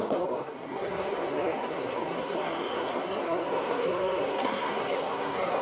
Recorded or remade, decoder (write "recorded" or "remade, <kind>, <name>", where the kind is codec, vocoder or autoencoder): remade, codec, SNAC